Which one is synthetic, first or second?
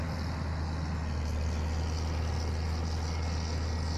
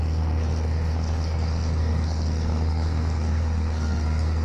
second